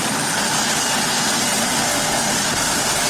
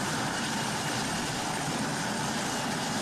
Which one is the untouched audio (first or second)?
first